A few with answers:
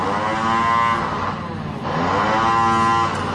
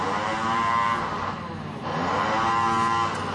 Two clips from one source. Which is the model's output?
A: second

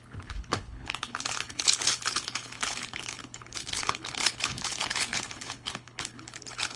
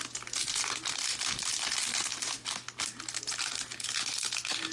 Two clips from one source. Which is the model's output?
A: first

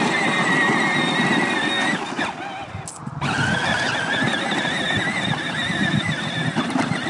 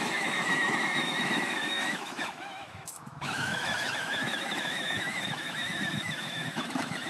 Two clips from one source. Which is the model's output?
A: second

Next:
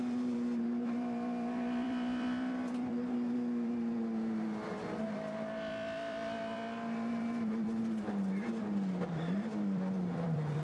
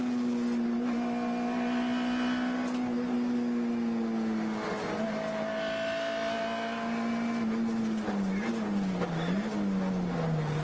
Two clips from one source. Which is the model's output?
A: first